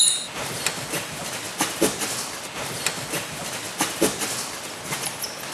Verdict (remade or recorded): recorded